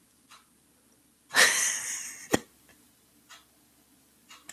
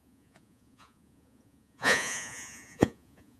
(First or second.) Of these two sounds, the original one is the first